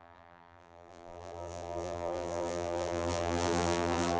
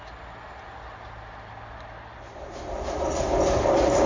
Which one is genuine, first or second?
second